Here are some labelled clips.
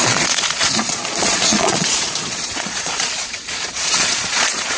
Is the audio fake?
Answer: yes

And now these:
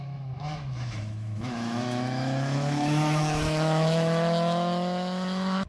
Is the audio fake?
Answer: yes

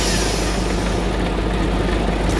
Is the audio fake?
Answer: no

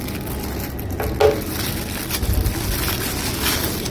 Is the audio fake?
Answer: no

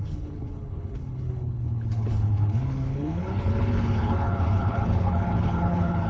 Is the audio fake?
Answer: yes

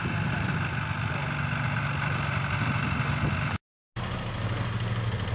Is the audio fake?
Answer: no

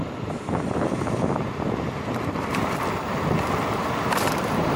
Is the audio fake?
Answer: yes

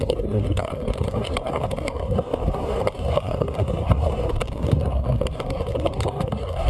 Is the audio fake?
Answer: yes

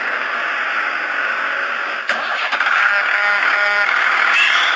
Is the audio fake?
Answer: yes